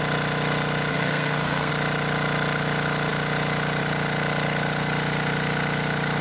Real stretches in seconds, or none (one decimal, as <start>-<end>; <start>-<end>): 0.0-0.9; 1.7-6.2